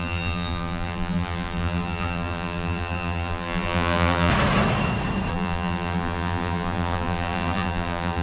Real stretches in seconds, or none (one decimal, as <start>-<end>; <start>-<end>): 4.3-5.3